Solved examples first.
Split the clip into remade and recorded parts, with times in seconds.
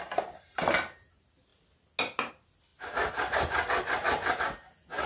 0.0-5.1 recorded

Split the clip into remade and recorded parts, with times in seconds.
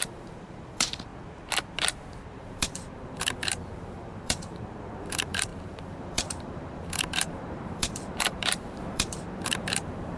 0.0-1.1 remade; 1.1-2.3 recorded; 2.3-10.2 remade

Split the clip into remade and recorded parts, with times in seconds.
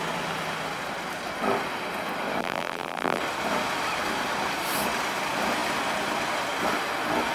0.0-2.4 recorded; 2.4-3.2 remade; 3.2-7.3 recorded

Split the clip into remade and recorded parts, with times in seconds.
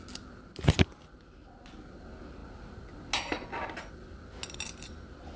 0.0-5.4 recorded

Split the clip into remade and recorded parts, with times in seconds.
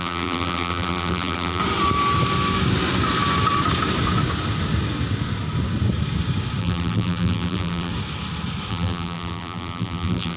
0.0-1.6 remade; 1.6-6.6 recorded; 6.6-7.9 remade; 7.9-8.7 recorded; 8.7-10.4 remade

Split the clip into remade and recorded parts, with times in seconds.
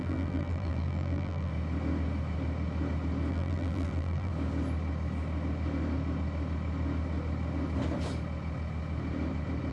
0.0-1.5 remade; 1.5-3.3 recorded; 3.3-4.3 remade; 4.3-9.7 recorded